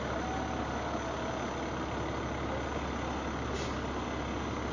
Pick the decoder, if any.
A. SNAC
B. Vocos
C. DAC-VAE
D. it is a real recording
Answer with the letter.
D